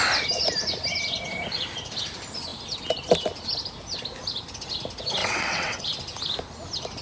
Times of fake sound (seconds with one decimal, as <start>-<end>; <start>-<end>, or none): 5.2-5.8